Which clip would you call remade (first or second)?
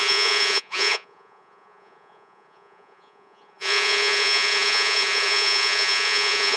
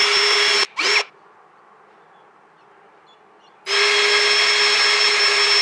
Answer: first